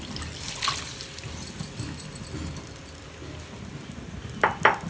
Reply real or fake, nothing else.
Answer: real